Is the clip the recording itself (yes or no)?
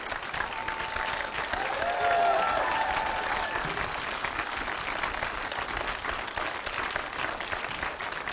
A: yes